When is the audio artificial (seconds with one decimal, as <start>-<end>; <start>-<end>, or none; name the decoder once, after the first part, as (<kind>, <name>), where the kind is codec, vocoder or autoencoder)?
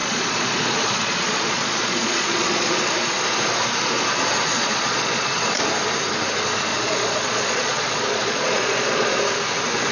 0.0-2.7 (vocoder, Vocos); 4.5-5.4; 6.7-9.2